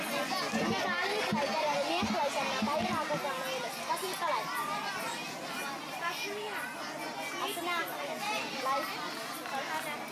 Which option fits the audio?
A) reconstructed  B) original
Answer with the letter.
B